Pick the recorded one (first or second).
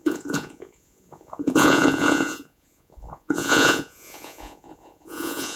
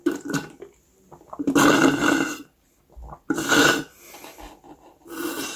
second